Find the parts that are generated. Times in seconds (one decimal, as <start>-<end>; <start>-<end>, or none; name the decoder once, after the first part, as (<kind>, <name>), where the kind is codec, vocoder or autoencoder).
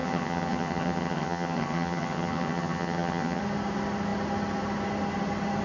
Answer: 0.0-3.4 (vocoder, HiFi-GAN)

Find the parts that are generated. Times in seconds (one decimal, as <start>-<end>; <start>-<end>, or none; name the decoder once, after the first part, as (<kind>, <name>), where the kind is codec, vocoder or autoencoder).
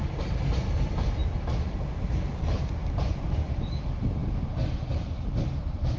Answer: none